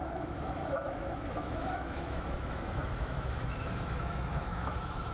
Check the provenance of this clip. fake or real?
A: fake